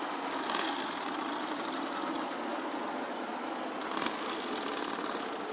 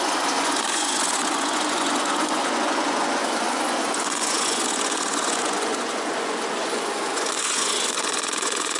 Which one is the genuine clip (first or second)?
first